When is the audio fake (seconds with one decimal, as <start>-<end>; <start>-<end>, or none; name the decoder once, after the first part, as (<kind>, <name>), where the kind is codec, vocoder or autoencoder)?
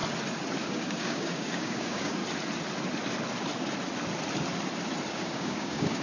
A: 0.7-2.2 (codec, DAC); 5.1-6.0